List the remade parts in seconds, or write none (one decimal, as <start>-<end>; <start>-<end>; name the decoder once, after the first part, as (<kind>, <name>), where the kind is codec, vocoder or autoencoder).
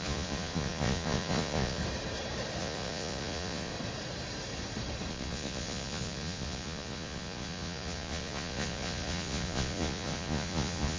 0.0-1.8 (vocoder, Vocos); 2.6-3.7; 5.1-11.0